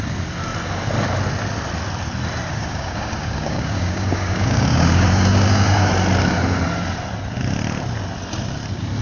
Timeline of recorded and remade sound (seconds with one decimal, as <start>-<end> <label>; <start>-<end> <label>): 0.0-2.5 recorded; 2.5-5.9 remade; 5.9-9.0 recorded